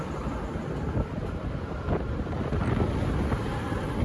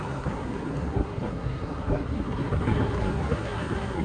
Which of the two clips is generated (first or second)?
second